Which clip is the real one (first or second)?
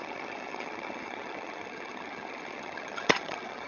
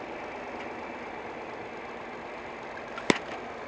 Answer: second